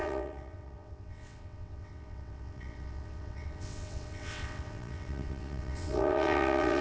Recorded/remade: remade